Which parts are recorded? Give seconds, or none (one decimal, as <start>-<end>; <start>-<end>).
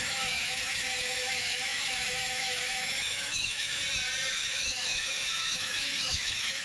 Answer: 3.8-4.3